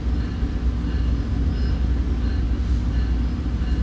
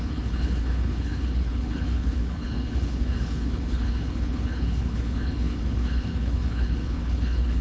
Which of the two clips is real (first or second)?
first